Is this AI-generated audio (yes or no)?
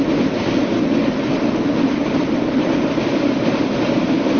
no